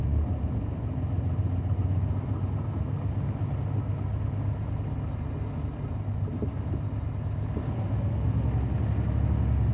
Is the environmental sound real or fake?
real